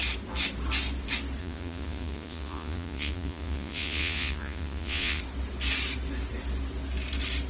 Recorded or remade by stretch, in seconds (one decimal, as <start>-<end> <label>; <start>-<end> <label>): 0.0-1.4 recorded; 1.4-5.2 remade; 5.2-7.5 recorded